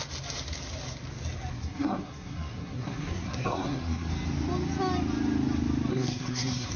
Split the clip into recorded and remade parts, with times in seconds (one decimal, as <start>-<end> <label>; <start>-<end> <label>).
0.0-1.5 recorded; 1.5-4.1 remade; 4.1-5.9 recorded; 5.9-6.8 remade